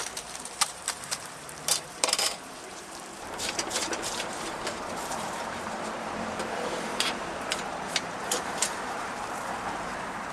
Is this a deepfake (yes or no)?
yes